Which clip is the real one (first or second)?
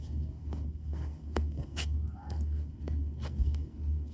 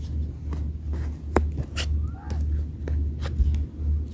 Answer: second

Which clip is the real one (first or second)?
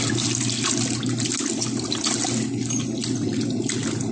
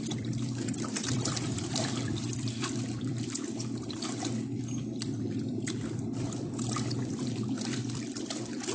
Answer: first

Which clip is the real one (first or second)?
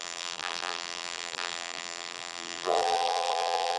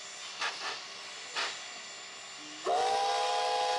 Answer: second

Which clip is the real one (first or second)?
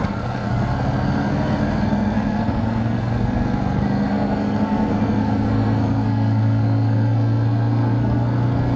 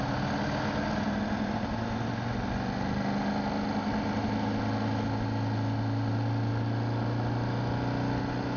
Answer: second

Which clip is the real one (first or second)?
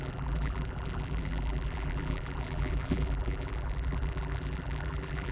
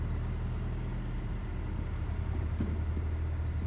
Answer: second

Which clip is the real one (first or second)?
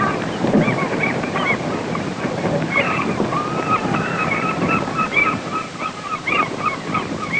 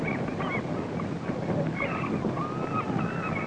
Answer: second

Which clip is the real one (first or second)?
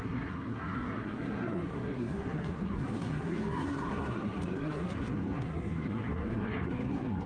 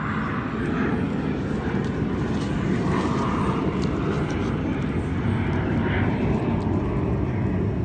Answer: second